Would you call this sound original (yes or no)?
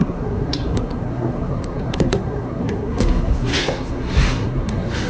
no